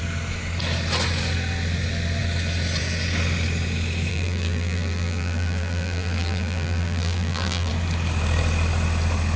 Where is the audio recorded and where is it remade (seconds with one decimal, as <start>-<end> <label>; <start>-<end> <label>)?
0.0-4.1 recorded; 4.1-7.7 remade; 7.7-9.4 recorded